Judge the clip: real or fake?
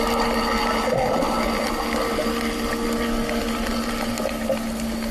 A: real